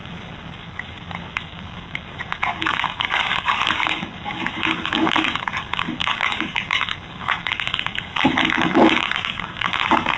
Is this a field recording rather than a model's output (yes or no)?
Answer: no